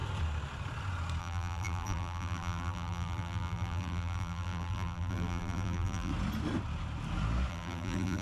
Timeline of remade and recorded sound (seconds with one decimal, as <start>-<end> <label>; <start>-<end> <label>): 0.0-1.2 recorded; 1.2-6.1 remade; 6.1-7.5 recorded; 7.5-8.2 remade